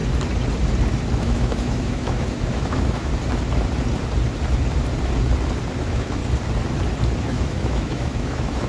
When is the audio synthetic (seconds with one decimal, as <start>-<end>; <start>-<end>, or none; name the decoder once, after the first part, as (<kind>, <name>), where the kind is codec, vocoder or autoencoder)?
1.2-3.1 (autoencoder, DAC-VAE); 5.8-6.2; 7.2-8.7